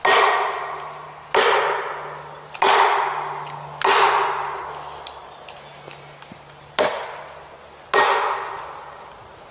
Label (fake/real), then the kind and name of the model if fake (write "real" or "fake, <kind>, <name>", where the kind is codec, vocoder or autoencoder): real